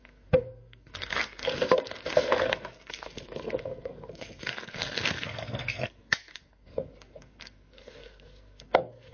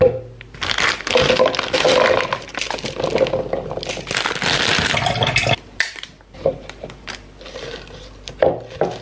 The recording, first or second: second